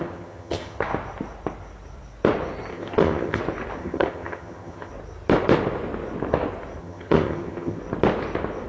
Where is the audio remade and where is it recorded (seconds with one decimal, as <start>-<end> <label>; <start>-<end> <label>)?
0.0-0.8 remade; 0.8-2.7 recorded; 2.7-3.4 remade; 3.4-3.8 recorded; 3.8-4.9 remade; 4.9-6.8 recorded; 6.8-7.8 remade; 7.8-8.7 recorded